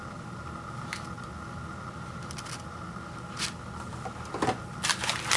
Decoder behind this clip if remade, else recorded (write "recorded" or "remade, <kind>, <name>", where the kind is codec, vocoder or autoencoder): recorded